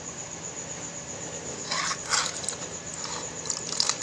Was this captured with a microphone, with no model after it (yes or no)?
yes